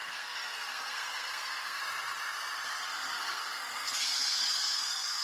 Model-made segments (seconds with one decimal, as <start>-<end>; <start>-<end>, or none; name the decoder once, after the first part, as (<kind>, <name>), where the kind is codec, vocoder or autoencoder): 0.0-1.8 (codec, SNAC); 2.9-5.2